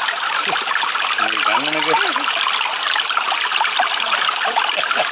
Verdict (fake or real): real